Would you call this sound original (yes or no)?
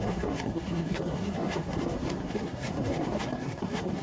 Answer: no